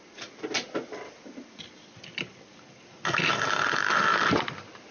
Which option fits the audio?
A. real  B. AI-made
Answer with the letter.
A